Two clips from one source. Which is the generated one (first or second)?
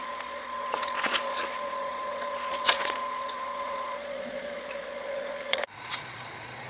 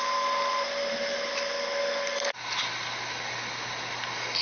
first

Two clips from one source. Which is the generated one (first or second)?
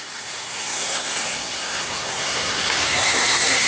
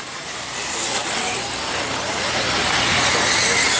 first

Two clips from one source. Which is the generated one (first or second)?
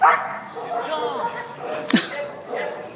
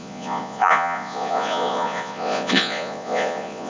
second